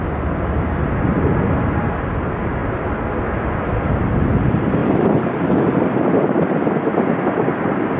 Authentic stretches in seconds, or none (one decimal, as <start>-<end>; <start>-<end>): 0.0-8.0